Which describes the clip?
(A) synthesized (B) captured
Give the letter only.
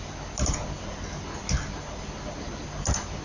B